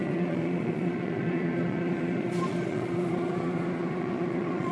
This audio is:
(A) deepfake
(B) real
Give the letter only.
A